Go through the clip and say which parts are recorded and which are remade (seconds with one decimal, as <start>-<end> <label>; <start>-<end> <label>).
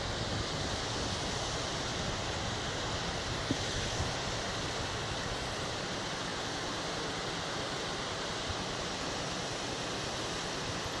0.0-11.0 recorded